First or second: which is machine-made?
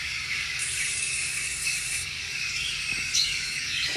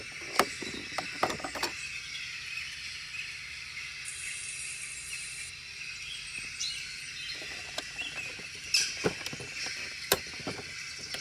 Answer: first